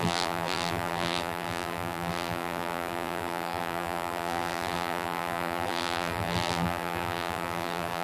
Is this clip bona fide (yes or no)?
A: no